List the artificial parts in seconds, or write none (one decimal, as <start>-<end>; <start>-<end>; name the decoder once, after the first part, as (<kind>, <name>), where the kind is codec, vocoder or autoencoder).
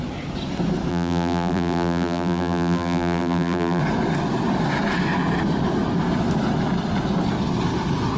0.9-3.8 (vocoder, BigVGAN v2)